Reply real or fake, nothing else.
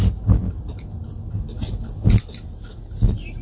real